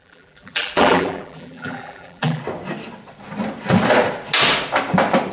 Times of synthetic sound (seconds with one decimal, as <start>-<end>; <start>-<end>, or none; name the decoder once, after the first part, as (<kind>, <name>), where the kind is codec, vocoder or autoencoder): 0.0-2.4 (vocoder, BigVGAN v2)